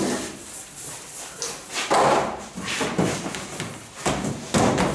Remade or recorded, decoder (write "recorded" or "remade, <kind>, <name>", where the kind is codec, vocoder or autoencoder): recorded